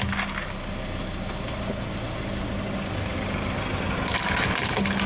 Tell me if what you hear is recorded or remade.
recorded